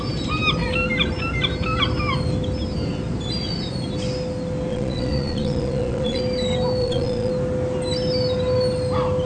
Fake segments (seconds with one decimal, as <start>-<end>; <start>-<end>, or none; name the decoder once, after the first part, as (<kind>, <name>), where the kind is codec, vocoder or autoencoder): 4.7-6.2 (vocoder, Vocos); 6.8-7.3